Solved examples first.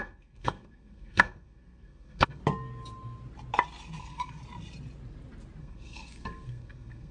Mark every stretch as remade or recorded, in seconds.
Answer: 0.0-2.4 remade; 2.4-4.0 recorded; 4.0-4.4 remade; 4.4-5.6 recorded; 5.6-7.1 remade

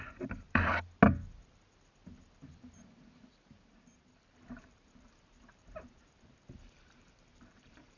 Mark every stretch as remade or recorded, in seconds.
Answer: 0.0-0.7 remade; 0.7-4.5 recorded; 4.5-8.0 remade

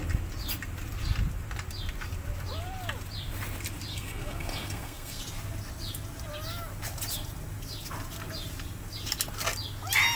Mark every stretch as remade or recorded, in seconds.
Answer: 0.0-3.9 recorded; 3.9-5.2 remade; 5.2-10.2 recorded

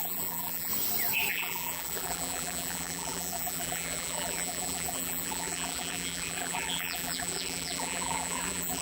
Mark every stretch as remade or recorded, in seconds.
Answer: 0.0-0.7 remade; 0.7-1.3 recorded; 1.3-8.8 remade

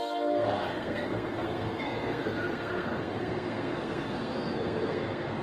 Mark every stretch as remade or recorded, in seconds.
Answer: 0.0-5.4 remade

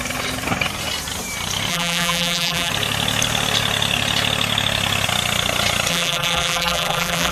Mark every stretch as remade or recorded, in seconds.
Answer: 0.0-1.7 recorded; 1.7-2.7 remade; 2.7-5.9 recorded; 5.9-7.3 remade

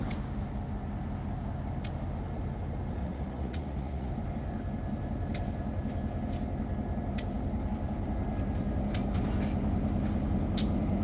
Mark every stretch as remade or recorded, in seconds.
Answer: 0.0-3.0 recorded; 3.0-4.1 remade; 4.1-11.0 recorded

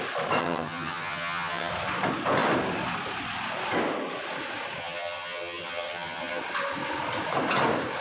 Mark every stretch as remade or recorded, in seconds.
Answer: 0.0-0.4 recorded; 0.4-1.7 remade; 1.7-4.8 recorded; 4.8-6.4 remade; 6.4-8.0 recorded